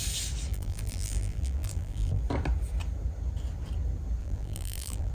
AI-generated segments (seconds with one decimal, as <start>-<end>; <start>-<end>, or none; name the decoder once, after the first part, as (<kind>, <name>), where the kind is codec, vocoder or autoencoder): 0.5-2.2 (vocoder, BigVGAN v2); 4.2-5.1